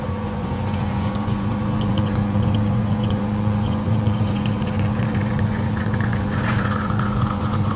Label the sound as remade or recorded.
remade